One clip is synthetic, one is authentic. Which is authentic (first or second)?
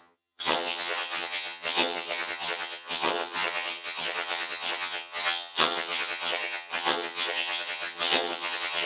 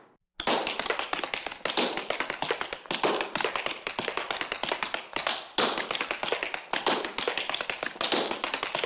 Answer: second